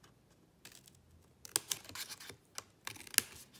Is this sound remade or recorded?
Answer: recorded